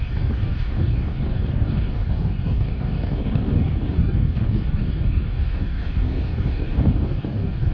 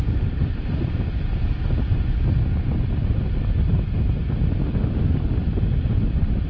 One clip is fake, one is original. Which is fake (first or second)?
first